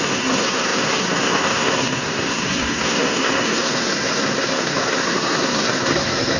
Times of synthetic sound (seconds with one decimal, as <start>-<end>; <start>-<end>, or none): 0.0-6.4